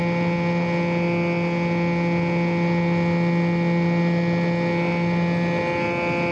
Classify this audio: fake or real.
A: real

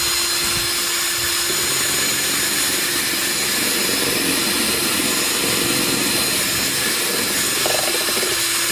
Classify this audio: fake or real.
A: real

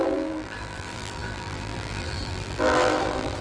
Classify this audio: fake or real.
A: fake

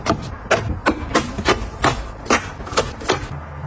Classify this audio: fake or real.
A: real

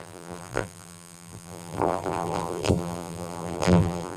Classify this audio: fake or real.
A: fake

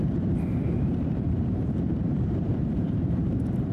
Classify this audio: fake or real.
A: fake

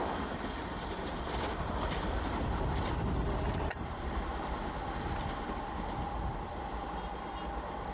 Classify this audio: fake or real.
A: real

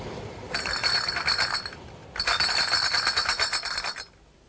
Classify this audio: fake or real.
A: fake